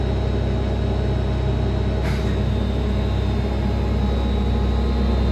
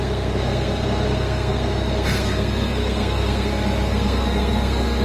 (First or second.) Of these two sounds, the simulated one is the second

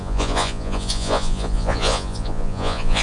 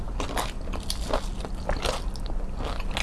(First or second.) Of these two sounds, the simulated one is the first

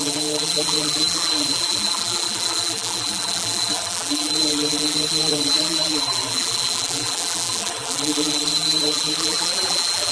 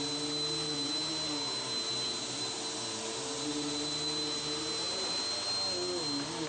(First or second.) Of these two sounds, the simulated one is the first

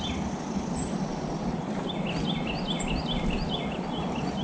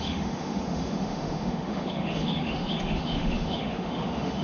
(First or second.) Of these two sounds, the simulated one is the second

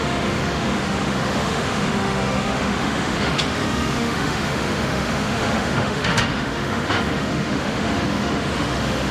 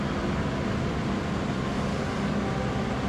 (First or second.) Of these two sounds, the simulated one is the first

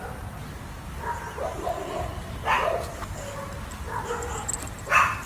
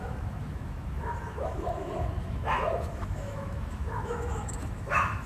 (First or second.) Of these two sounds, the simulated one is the second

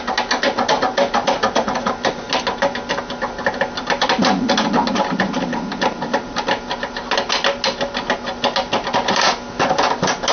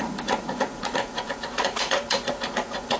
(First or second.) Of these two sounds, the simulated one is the second